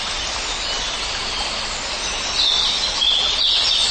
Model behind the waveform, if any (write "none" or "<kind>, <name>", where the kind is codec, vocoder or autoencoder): none